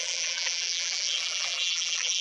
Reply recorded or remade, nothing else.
remade